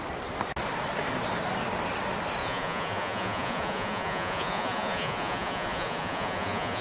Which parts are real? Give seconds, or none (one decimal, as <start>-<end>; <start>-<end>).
0.0-2.4